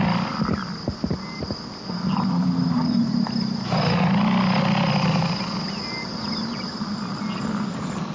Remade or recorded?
recorded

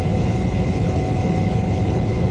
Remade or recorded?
remade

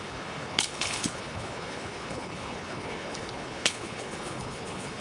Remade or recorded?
remade